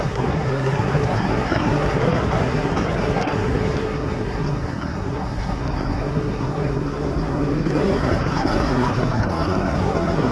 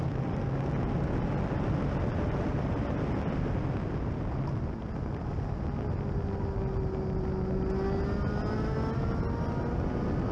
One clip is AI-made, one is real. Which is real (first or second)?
second